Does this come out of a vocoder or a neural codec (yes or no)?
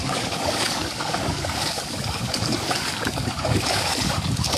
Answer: yes